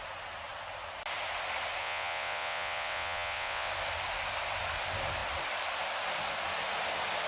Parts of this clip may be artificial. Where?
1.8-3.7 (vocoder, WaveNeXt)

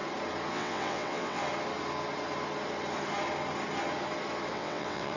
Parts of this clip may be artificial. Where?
0.5-1.4 (vocoder, WaveNeXt); 4.5-5.2

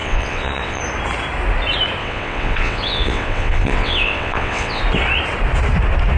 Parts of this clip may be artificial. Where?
0.0-0.8 (vocoder, WaveNeXt); 2.0-4.8

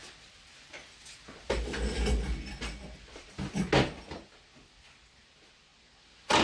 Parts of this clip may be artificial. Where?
none